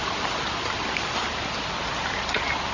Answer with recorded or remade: recorded